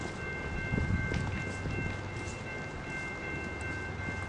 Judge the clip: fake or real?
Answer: real